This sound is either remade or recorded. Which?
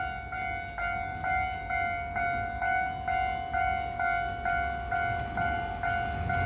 recorded